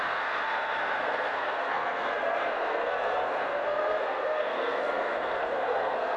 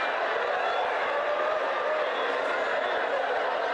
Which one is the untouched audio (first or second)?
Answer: second